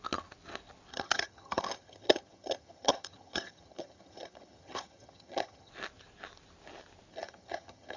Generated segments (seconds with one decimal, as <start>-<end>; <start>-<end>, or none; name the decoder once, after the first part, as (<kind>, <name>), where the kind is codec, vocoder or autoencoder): 0.9-5.7 (vocoder, HiFi-GAN); 7.1-8.0